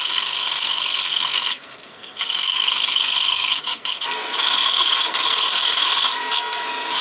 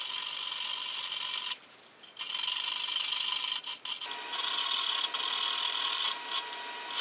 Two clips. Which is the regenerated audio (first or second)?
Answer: first